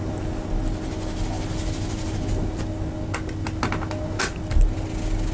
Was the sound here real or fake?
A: real